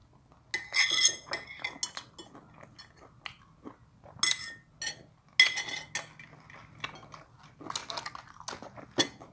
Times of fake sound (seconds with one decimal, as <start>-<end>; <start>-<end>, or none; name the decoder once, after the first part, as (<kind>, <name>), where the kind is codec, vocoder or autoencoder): none